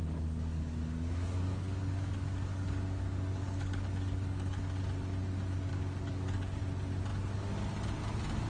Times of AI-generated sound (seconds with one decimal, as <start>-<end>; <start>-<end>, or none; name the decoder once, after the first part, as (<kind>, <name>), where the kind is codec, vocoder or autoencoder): 0.0-4.8 (codec, DAC); 5.7-6.6

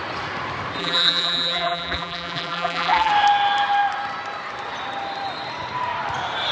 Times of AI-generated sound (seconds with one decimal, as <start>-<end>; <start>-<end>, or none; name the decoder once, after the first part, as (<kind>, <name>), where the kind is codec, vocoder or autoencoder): 0.8-3.1 (vocoder, BigVGAN v2)

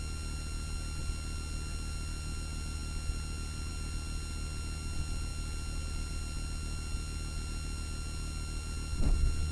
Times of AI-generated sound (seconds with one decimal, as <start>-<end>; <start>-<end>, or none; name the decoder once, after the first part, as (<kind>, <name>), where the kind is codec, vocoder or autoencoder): none